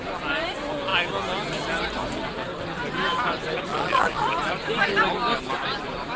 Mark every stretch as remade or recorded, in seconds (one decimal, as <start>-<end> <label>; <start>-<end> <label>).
0.0-3.7 recorded; 3.7-4.3 remade; 4.3-6.2 recorded